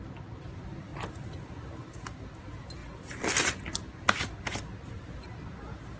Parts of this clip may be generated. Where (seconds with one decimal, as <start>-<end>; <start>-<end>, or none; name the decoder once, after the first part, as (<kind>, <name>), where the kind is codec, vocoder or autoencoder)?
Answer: none